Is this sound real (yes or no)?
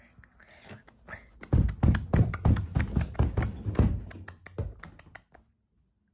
yes